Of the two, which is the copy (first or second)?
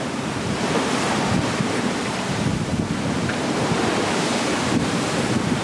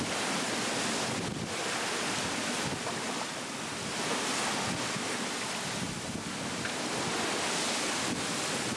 first